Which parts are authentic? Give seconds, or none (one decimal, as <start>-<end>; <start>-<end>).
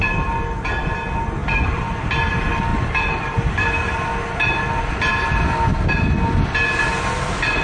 0.0-1.4; 2.1-2.7; 3.5-7.6